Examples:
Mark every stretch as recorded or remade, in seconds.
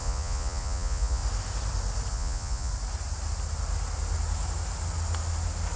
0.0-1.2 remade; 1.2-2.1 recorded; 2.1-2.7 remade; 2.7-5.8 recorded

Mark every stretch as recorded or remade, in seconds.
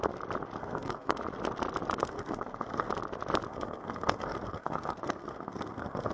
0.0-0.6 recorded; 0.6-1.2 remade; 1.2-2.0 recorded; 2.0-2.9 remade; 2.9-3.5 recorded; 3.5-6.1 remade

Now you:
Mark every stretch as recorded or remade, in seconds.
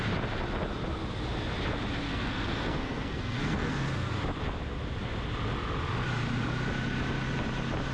0.0-2.1 recorded; 2.1-4.1 remade; 4.1-7.9 recorded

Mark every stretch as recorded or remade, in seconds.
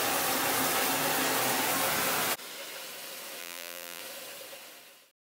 0.0-3.4 recorded; 3.4-4.0 remade; 4.0-5.2 recorded